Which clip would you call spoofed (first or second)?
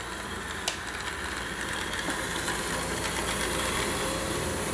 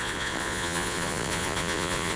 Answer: second